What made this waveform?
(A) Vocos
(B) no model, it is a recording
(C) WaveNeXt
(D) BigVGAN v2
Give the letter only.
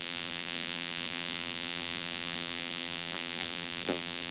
D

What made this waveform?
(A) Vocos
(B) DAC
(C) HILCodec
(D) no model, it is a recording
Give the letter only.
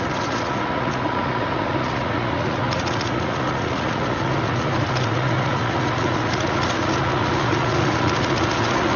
A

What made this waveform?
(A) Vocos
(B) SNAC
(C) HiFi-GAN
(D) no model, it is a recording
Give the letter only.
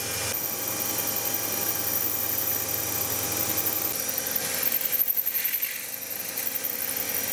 D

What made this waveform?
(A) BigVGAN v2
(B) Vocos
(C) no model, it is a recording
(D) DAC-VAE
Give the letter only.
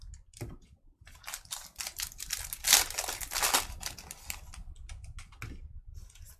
C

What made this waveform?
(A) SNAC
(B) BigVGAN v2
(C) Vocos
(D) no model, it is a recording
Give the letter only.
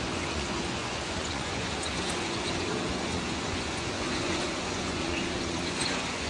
C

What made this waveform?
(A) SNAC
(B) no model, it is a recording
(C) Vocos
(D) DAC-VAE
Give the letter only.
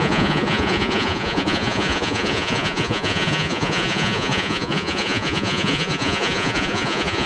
C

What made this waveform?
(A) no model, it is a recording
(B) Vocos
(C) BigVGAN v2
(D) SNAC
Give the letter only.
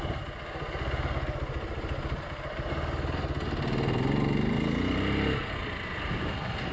A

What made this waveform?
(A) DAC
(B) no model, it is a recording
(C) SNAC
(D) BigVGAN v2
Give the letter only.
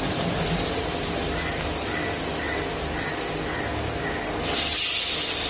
B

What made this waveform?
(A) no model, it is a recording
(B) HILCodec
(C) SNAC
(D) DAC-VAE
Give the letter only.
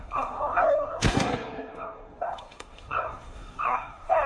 C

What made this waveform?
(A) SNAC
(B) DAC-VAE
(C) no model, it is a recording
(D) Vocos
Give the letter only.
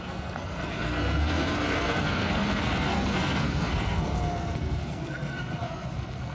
A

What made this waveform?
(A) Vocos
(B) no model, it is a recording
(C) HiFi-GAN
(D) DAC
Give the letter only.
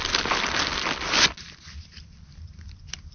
B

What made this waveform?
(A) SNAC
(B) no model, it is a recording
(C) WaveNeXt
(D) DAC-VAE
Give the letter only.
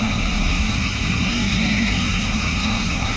A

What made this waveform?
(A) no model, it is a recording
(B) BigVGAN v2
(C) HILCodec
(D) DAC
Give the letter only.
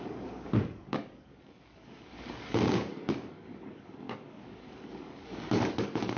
D